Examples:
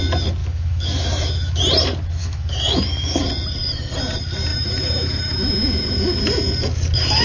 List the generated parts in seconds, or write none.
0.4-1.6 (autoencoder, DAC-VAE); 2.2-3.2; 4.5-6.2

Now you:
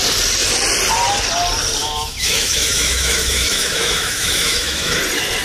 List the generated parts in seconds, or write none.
1.8-5.0 (autoencoder, DAC-VAE)

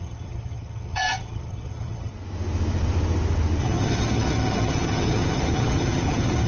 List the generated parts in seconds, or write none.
0.0-2.1 (vocoder, HiFi-GAN); 3.6-6.5